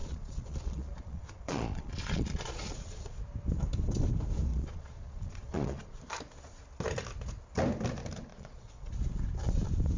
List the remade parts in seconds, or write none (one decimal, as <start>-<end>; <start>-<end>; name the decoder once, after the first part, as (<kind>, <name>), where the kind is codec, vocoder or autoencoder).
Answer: 0.0-3.2 (vocoder, Vocos); 4.5-6.0; 8.3-8.9